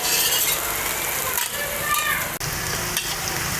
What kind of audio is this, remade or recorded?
recorded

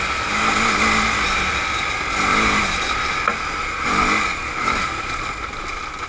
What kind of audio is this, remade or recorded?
recorded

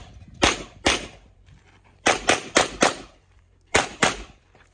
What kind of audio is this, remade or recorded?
remade